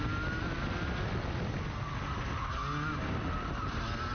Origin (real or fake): real